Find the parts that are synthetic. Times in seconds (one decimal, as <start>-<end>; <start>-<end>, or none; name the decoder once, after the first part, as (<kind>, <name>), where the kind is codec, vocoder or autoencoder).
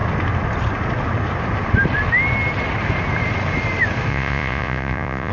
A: 4.1-5.3 (vocoder, Vocos)